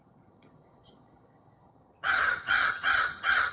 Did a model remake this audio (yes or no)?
yes